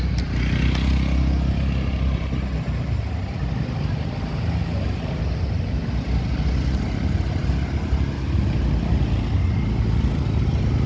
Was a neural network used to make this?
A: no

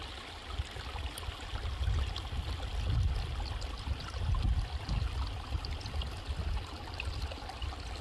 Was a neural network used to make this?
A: no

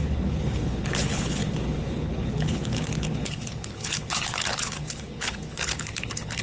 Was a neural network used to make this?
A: yes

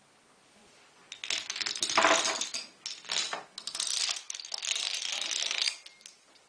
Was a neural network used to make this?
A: no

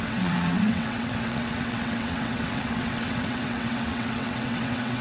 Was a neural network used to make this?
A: yes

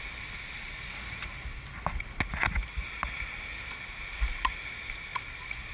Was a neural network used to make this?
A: no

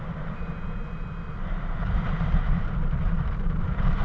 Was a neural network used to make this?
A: yes